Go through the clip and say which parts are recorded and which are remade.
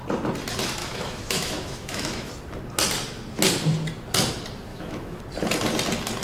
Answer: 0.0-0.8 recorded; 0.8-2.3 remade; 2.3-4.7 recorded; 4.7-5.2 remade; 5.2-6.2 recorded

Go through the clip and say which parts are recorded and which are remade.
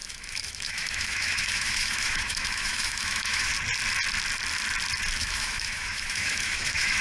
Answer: 0.0-3.5 remade; 3.5-5.2 recorded; 5.2-7.0 remade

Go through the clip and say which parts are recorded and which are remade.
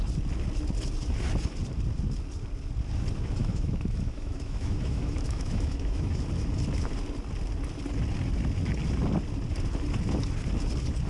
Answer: 0.0-3.4 recorded; 3.4-6.2 remade; 6.2-11.1 recorded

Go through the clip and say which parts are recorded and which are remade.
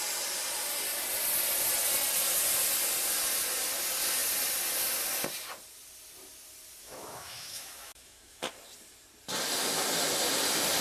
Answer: 0.0-6.8 recorded; 6.8-8.4 remade; 8.4-10.8 recorded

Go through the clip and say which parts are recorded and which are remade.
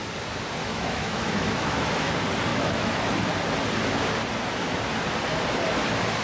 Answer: 0.0-0.6 recorded; 0.6-2.1 remade; 2.1-2.5 recorded; 2.5-3.1 remade; 3.1-6.2 recorded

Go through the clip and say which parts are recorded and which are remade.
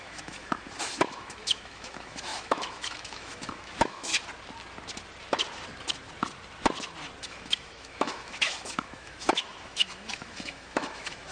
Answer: 0.0-4.1 remade; 4.1-7.2 recorded; 7.2-11.3 remade